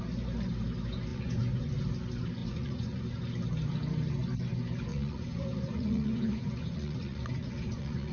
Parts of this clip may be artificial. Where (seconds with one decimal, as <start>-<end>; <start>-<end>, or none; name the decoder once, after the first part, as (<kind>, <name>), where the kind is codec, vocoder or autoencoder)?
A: 1.1-1.7 (vocoder, Vocos); 2.4-3.0; 4.9-8.1